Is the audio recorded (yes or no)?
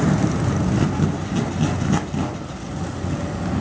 yes